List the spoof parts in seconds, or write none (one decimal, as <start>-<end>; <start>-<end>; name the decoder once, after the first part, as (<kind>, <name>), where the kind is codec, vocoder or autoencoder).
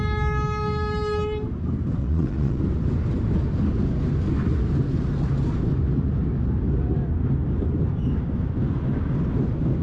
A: 2.0-2.6 (vocoder, Vocos)